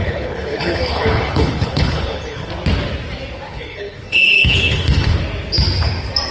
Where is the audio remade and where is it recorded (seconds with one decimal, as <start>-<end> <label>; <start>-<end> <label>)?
0.0-2.5 remade; 2.5-3.5 recorded; 3.5-5.2 remade; 5.2-6.3 recorded